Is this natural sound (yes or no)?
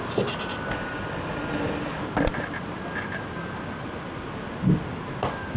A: yes